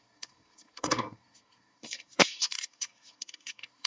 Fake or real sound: fake